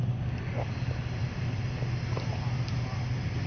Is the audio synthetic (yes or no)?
no